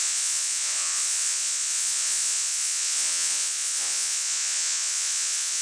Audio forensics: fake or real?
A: fake